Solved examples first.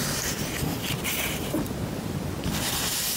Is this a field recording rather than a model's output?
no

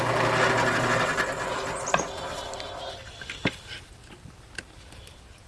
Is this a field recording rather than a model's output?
yes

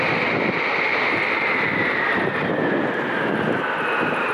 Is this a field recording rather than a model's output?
yes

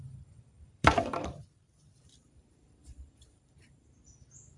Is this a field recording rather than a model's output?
no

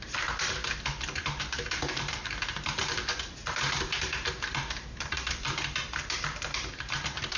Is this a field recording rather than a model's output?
no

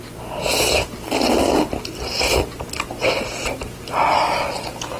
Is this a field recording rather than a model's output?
yes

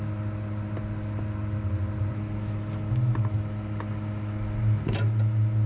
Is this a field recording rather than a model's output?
yes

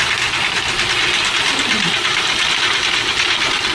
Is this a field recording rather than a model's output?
yes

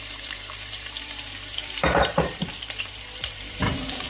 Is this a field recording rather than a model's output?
no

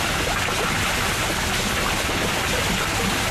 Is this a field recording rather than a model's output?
yes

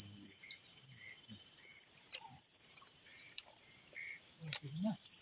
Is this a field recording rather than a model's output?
no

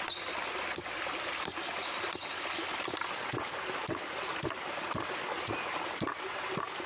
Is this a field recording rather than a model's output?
yes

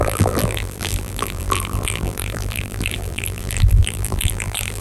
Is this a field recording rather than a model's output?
no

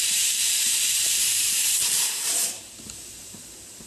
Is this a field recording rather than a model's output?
no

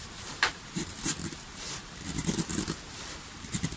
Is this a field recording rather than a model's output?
no